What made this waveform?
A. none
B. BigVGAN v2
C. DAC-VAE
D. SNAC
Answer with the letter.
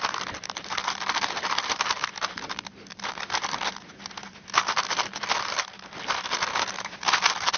B